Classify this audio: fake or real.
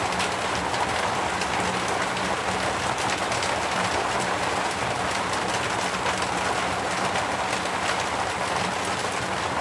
real